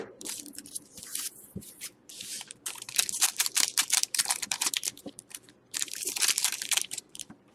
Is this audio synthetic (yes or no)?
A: yes